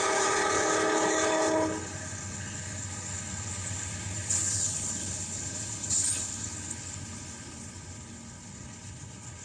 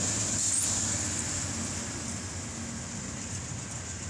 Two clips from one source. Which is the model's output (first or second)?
first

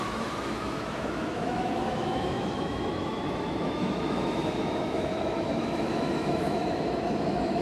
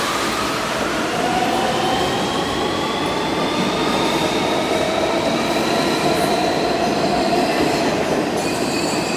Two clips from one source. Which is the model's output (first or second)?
first